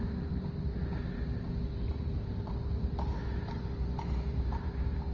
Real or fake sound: real